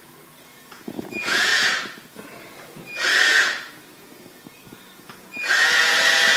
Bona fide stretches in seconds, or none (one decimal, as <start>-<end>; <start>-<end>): none